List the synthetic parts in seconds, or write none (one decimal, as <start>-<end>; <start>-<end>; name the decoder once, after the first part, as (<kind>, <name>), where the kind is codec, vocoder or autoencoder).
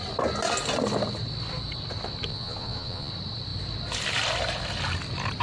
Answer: 2.3-3.1 (vocoder, Vocos)